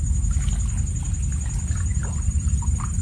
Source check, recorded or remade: recorded